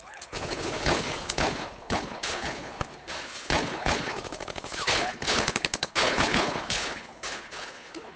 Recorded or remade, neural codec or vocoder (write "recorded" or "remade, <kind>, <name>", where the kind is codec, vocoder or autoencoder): remade, codec, HILCodec